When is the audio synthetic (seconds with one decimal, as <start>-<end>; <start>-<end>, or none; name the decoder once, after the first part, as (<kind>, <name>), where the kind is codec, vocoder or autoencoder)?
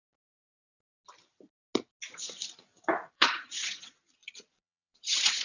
3.1-5.4 (vocoder, Vocos)